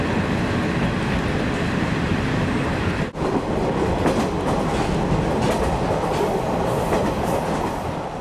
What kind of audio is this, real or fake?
real